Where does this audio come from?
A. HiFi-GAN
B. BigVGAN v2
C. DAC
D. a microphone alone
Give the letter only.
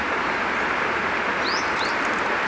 D